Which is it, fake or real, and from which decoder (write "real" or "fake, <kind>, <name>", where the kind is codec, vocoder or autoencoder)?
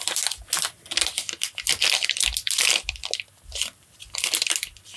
real